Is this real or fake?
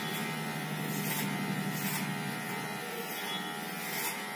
real